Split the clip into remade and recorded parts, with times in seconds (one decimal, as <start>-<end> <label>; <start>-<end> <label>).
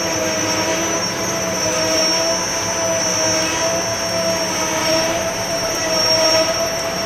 0.0-0.7 recorded; 0.7-2.0 remade; 2.0-4.8 recorded; 4.8-7.1 remade